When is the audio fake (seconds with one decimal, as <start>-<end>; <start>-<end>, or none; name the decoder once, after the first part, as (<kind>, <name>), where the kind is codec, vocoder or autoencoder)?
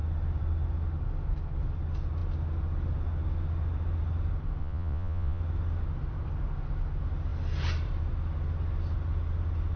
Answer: 4.6-5.4 (vocoder, Vocos)